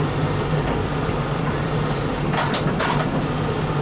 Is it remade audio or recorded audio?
recorded